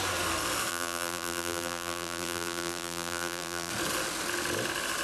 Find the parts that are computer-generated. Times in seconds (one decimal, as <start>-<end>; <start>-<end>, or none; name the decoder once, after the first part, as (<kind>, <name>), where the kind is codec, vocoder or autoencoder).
0.7-3.7 (vocoder, BigVGAN v2)